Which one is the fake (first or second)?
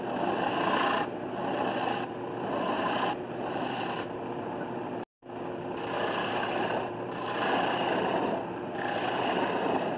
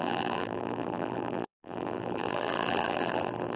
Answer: second